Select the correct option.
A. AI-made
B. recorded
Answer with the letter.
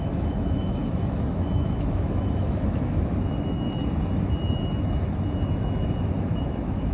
A